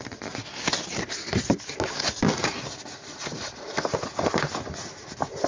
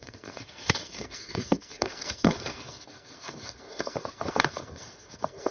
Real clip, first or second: first